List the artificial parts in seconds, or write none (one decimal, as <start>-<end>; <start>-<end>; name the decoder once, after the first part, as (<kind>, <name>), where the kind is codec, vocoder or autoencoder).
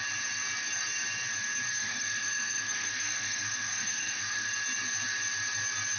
1.7-4.5 (codec, SNAC)